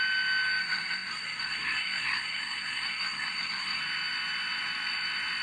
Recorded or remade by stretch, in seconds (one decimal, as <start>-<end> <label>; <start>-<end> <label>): 0.0-0.6 recorded; 0.6-3.8 remade; 3.8-5.4 recorded